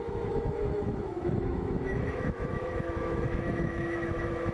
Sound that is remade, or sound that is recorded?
remade